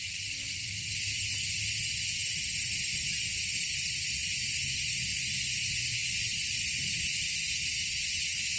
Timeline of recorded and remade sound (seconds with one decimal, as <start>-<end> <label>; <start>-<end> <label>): 0.0-8.6 recorded